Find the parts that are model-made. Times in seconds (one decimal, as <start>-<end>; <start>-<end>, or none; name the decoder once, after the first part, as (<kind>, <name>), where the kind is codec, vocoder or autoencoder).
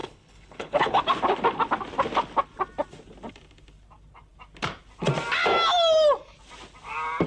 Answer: 0.0-1.0 (codec, HILCodec)